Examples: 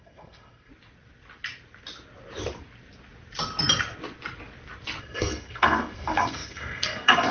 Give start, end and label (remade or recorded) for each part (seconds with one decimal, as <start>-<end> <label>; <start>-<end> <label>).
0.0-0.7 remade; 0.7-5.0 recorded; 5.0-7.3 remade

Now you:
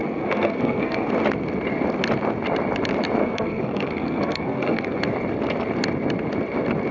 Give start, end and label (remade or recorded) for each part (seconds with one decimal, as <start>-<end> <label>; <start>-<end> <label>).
0.0-1.1 remade; 1.1-3.2 recorded; 3.2-5.0 remade; 5.0-6.9 recorded

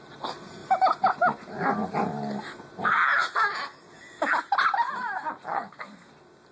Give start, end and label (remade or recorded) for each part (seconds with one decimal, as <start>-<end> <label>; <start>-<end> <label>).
0.0-5.5 recorded; 5.5-6.1 remade; 6.1-6.5 recorded

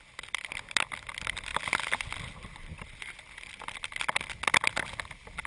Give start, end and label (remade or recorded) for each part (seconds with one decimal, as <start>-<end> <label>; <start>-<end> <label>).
0.0-5.5 recorded

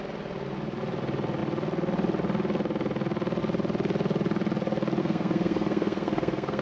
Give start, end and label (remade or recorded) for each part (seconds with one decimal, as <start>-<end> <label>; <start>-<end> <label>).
0.0-5.0 recorded; 5.0-6.6 remade

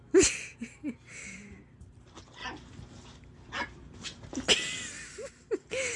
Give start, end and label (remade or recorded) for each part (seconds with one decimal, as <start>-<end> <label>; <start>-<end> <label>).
0.0-6.0 recorded